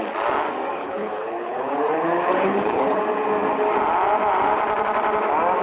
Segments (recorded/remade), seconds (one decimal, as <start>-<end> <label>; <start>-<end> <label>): 0.0-0.8 recorded; 0.8-3.0 remade; 3.0-5.6 recorded